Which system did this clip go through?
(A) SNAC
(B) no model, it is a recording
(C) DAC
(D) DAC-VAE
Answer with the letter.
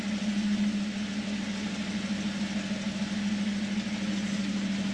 B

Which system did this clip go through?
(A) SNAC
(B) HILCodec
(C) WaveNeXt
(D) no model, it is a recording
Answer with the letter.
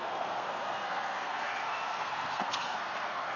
A